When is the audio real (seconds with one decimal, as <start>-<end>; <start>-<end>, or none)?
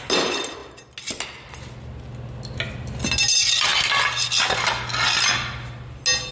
0.0-6.3